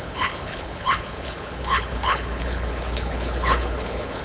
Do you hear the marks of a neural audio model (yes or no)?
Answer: yes